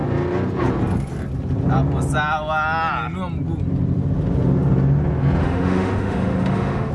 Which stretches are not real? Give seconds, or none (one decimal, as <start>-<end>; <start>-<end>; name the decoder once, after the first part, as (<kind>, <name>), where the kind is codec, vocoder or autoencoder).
5.4-6.9 (autoencoder, DAC-VAE)